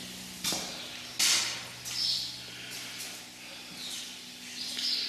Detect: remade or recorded recorded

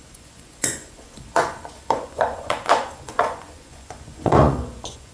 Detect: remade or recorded remade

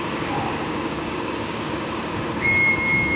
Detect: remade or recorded remade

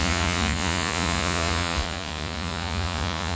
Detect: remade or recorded remade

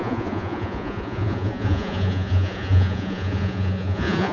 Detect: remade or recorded remade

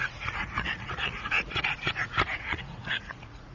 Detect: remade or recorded remade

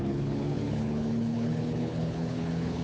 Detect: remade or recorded remade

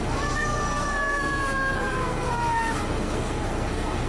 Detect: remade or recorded remade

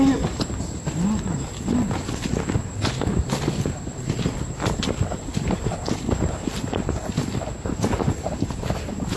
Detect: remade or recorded recorded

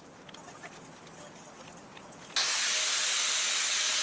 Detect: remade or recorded recorded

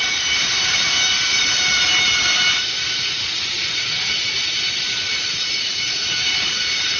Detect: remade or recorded remade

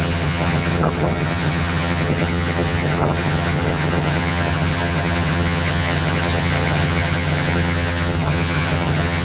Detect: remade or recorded remade